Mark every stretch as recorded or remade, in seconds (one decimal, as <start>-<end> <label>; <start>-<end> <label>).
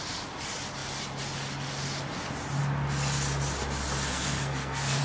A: 0.0-4.1 recorded; 4.1-5.0 remade